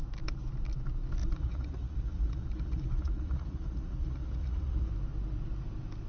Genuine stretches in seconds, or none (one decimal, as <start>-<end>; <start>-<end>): 0.0-1.2; 4.9-6.1

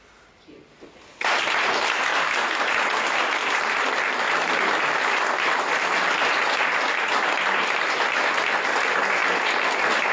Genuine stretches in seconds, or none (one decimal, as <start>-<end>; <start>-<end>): 0.0-3.4; 8.2-10.1

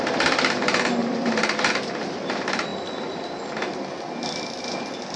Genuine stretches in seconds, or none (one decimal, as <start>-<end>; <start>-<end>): 0.0-1.0; 1.7-5.2

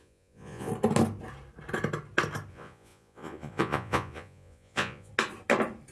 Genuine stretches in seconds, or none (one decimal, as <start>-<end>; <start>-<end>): 0.7-2.5; 5.1-5.9